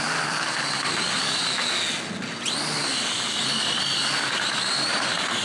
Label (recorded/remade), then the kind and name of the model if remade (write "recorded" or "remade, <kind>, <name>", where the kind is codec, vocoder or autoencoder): recorded